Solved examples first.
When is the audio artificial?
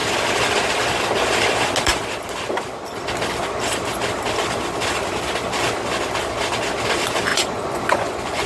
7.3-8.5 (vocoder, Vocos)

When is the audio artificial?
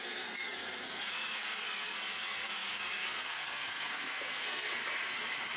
0.0-4.8 (codec, SNAC)